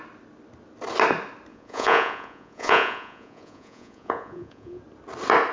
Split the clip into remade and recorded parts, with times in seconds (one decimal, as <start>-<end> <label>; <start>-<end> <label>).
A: 0.0-1.5 recorded; 1.5-4.8 remade; 4.8-5.5 recorded